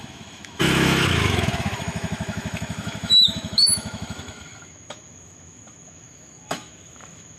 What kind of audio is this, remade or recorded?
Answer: remade